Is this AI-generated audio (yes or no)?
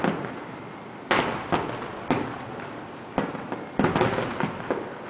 no